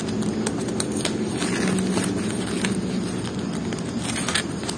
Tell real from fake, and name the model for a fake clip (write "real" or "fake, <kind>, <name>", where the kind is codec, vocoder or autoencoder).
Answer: real